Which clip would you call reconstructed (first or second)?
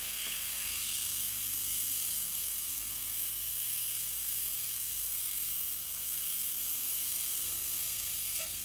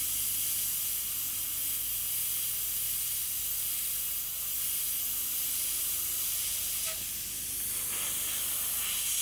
first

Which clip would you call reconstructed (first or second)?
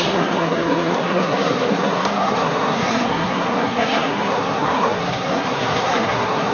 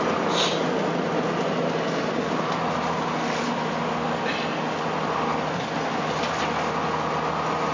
first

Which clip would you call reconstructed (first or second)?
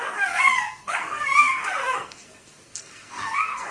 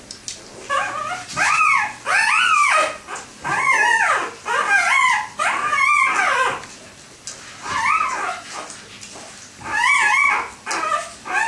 first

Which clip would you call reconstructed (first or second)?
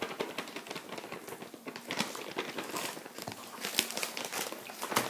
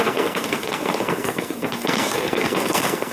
second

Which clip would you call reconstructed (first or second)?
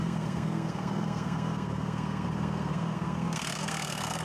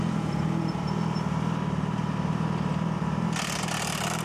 first